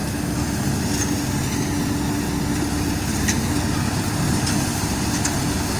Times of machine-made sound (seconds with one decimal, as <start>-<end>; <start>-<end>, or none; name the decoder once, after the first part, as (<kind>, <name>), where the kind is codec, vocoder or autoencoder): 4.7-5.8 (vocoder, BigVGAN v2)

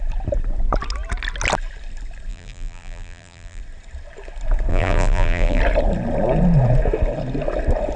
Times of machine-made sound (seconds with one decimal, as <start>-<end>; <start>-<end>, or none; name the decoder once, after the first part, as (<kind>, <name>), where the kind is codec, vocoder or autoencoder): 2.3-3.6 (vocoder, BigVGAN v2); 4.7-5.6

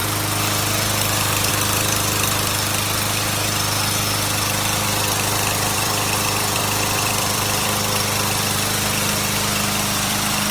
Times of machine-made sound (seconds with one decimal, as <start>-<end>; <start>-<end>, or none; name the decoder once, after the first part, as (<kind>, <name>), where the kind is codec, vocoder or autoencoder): 0.0-10.5 (vocoder, BigVGAN v2)

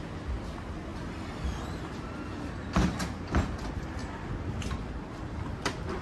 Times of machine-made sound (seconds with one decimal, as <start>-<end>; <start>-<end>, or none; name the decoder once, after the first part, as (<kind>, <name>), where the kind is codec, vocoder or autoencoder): 0.0-4.0 (vocoder, BigVGAN v2); 4.7-6.0

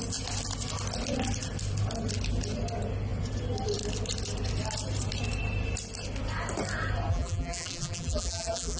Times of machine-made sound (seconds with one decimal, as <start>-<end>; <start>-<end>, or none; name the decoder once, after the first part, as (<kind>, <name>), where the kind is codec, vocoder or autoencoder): 7.1-8.8 (vocoder, BigVGAN v2)

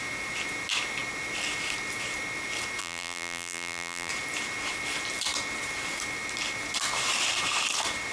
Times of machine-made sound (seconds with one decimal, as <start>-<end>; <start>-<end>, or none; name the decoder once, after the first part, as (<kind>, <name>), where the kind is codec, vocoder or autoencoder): 2.8-4.1 (vocoder, BigVGAN v2)

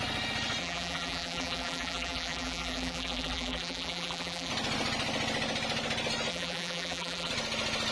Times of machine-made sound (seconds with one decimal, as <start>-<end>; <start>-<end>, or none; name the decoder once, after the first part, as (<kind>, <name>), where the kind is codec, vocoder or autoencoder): 0.6-4.5 (vocoder, BigVGAN v2); 6.3-7.3

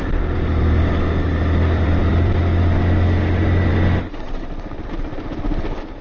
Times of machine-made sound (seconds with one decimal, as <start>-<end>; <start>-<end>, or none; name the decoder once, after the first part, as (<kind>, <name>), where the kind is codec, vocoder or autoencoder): 0.0-2.4 (vocoder, BigVGAN v2)